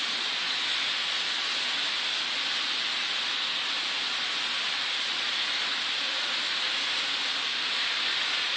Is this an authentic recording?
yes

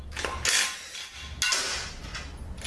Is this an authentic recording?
yes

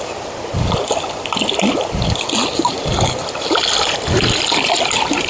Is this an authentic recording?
yes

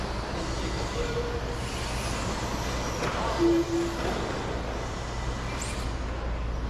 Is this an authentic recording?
yes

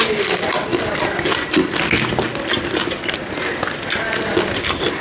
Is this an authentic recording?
yes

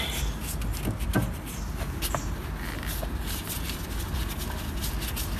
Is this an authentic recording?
yes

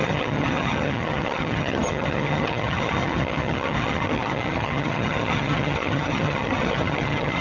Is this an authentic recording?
no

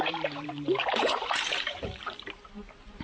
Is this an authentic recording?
no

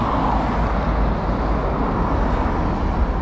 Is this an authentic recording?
yes